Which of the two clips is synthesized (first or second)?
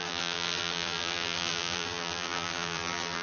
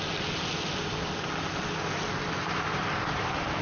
first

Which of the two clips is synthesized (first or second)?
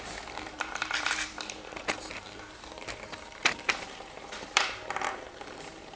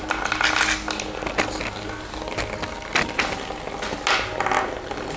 first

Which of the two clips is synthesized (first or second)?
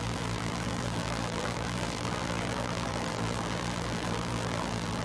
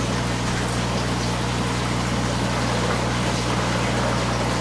first